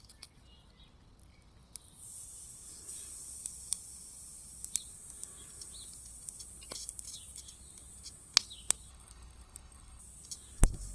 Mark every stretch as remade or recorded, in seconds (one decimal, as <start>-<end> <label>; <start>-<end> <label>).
0.0-8.9 recorded; 8.9-10.0 remade; 10.0-10.9 recorded